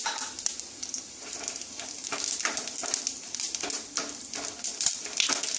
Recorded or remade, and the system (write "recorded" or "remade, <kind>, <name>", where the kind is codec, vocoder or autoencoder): recorded